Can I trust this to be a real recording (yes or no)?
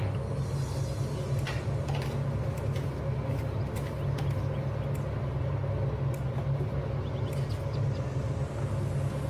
yes